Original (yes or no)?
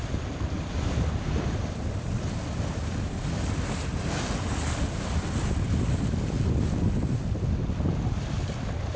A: yes